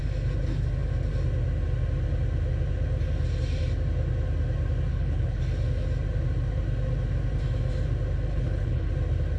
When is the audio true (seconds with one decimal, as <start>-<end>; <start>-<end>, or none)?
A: 0.0-4.9; 5.4-8.3; 8.9-9.4